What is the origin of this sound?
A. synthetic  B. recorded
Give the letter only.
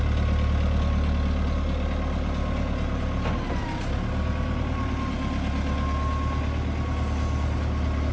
B